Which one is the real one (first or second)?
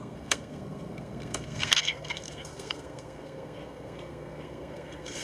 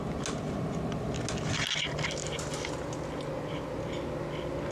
second